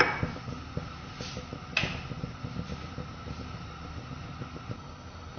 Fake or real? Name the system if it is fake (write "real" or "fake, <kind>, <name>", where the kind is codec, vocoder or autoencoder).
real